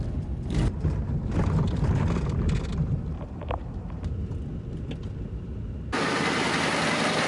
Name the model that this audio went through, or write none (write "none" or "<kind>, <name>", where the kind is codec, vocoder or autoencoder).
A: none